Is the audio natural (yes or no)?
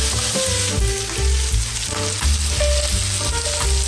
yes